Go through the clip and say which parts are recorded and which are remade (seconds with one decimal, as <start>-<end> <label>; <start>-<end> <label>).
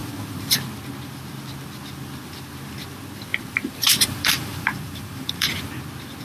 0.0-0.5 remade; 0.5-3.3 recorded; 3.3-5.7 remade; 5.7-6.2 recorded